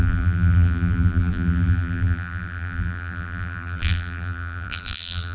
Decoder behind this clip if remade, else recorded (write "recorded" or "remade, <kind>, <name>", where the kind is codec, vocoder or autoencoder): remade, vocoder, BigVGAN v2